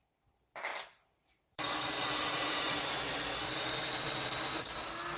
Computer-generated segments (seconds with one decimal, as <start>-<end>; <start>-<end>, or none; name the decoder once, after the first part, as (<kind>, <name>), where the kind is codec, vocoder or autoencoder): 0.7-3.7 (vocoder, BigVGAN v2)